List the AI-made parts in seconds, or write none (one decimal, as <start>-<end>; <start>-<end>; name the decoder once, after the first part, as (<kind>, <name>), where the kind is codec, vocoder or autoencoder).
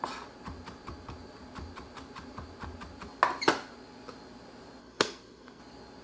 4.8-5.6 (codec, SNAC)